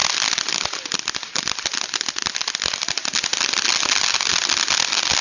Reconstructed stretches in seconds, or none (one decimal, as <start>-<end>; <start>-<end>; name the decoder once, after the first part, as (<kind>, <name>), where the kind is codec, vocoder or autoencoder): none

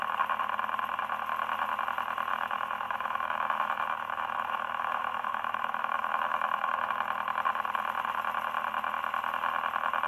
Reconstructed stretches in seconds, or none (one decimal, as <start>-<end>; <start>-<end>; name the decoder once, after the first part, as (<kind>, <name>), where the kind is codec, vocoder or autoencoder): 2.3-6.9 (autoencoder, DAC-VAE)

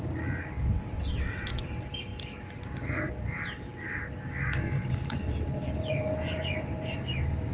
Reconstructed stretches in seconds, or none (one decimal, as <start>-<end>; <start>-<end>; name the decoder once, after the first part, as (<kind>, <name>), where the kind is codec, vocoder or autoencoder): 0.7-1.7 (vocoder, WaveNeXt)

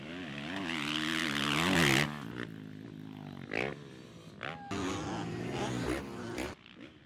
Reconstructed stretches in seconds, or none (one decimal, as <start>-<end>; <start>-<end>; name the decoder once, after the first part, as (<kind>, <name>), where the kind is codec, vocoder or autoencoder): none

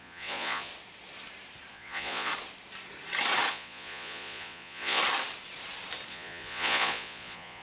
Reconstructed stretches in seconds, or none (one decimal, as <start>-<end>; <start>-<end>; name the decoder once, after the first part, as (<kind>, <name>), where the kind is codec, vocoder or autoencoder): 0.0-0.7 (vocoder, Vocos); 1.7-2.3; 3.5-5.0; 6.1-7.6

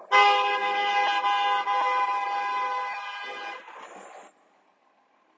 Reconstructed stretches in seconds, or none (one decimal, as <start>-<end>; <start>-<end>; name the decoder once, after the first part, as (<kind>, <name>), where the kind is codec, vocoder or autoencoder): none

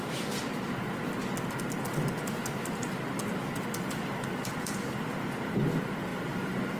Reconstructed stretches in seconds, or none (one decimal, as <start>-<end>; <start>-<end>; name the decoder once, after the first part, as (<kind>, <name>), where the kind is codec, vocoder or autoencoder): none